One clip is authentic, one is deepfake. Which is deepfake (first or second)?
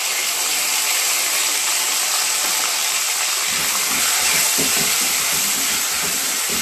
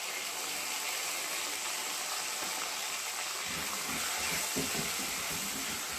first